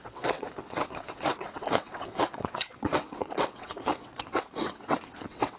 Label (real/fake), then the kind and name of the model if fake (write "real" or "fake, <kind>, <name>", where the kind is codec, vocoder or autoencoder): fake, vocoder, WaveNeXt